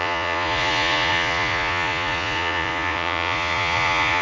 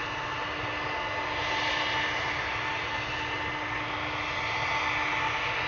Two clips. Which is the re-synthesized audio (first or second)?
first